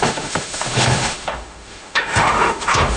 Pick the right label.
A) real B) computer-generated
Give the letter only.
B